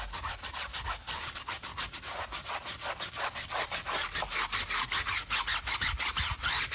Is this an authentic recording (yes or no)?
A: yes